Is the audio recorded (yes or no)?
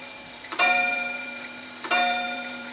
no